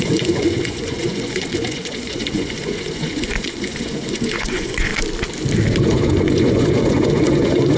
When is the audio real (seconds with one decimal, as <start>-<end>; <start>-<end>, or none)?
4.9-5.8